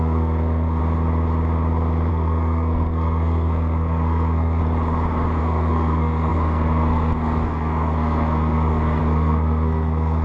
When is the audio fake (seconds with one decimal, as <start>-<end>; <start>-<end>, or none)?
0.0-0.8; 2.1-4.6; 5.4-10.2

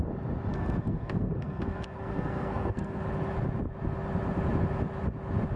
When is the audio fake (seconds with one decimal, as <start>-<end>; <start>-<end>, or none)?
0.5-3.0

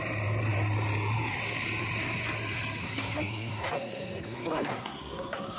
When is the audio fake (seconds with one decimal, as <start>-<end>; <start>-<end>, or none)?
2.8-5.6